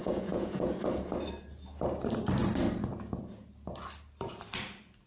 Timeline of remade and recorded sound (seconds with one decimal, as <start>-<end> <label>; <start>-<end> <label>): 0.0-0.7 remade; 0.7-5.1 recorded